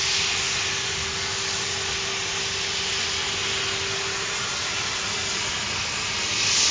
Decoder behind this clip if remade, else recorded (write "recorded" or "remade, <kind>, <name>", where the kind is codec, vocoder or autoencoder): recorded